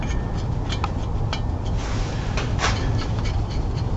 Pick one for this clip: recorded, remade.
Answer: recorded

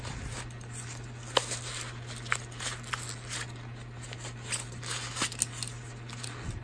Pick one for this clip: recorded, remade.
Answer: recorded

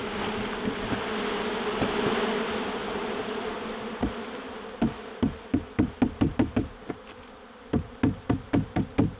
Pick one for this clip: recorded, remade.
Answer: recorded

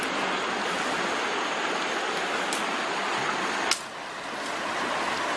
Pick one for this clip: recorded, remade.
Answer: recorded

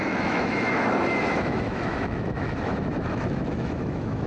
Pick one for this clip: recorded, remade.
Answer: remade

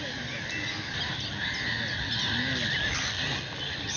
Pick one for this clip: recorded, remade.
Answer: recorded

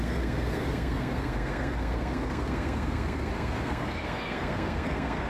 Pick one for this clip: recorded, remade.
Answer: remade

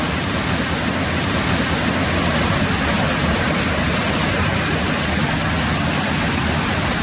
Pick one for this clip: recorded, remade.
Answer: recorded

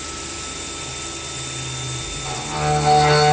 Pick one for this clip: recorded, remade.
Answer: recorded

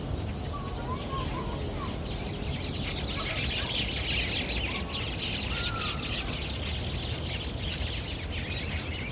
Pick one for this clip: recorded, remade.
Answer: recorded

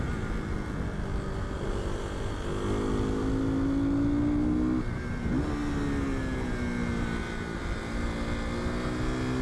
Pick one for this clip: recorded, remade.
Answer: recorded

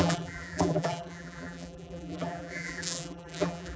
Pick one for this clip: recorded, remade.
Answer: remade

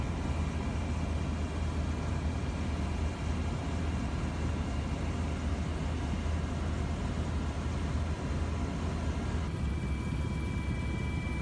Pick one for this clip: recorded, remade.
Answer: recorded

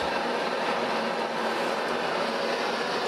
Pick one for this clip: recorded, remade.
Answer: recorded